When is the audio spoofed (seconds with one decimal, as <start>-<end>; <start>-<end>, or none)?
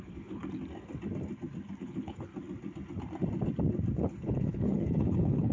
0.0-0.4; 1.8-2.3; 4.0-5.5